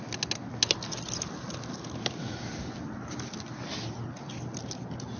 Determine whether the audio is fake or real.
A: real